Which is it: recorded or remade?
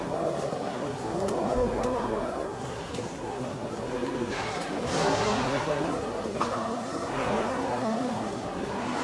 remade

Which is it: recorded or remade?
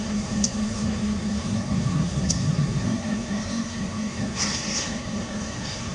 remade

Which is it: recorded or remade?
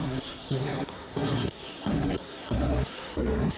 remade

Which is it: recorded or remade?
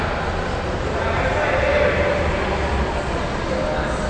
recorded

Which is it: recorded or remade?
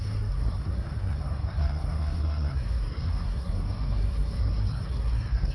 remade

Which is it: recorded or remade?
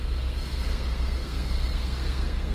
remade